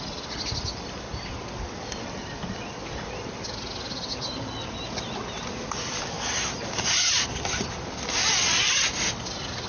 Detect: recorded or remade recorded